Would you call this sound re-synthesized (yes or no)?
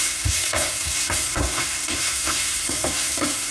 yes